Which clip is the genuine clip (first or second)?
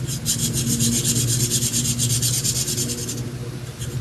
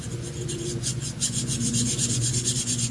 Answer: first